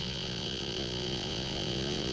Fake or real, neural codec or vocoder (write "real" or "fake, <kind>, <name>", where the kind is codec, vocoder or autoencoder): fake, vocoder, Vocos